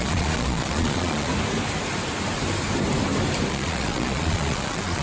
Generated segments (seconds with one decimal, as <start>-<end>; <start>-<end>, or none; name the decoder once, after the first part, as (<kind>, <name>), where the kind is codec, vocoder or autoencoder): 0.0-1.3 (vocoder, Vocos); 3.5-5.0

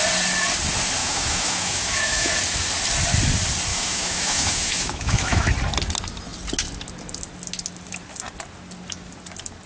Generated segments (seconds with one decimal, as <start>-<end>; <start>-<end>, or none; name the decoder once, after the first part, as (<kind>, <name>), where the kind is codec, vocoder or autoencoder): 1.0-2.3 (autoencoder, DAC-VAE); 3.7-5.5

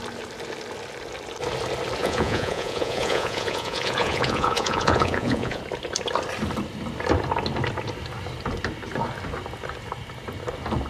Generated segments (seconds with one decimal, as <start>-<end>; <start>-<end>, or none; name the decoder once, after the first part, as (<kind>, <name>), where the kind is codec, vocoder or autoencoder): 2.0-5.6 (vocoder, Vocos)